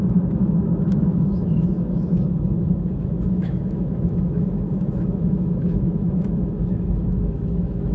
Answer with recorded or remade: remade